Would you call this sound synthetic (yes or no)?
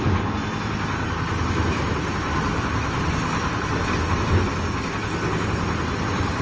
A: no